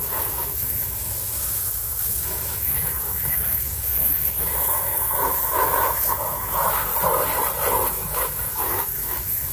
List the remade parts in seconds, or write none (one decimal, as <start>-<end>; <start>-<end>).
0.0-6.9; 7.9-9.5